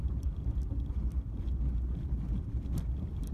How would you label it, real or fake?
real